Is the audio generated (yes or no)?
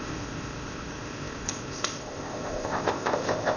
yes